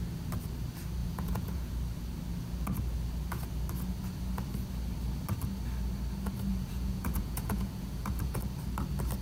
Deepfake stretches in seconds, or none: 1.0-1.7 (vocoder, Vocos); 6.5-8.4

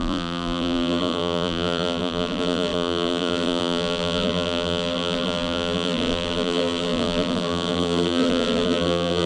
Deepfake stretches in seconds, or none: 0.0-9.3 (vocoder, BigVGAN v2)